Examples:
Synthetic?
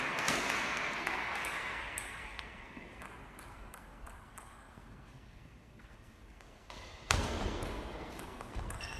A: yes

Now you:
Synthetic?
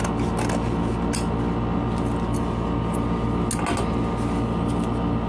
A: no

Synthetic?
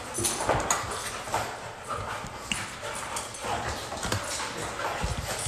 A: no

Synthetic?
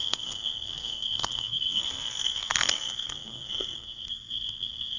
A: yes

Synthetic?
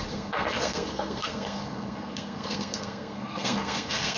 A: yes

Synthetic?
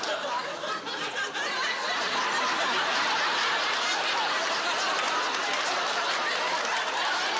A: no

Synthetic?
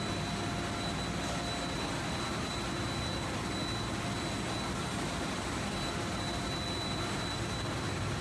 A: no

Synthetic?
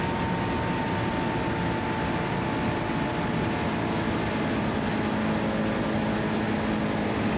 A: no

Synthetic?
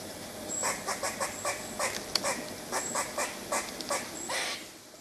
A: no